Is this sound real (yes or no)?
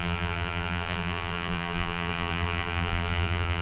no